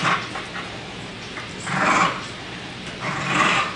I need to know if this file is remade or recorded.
remade